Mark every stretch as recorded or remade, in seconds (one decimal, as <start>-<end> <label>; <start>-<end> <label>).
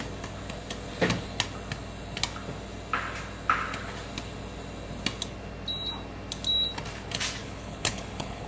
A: 0.0-7.4 recorded; 7.4-8.5 remade